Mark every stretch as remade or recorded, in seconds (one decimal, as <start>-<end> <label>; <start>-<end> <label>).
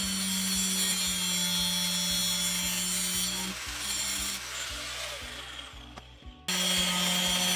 0.0-7.6 recorded